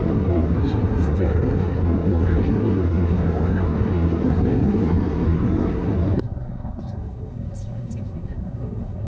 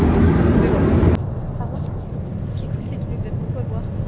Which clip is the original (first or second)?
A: second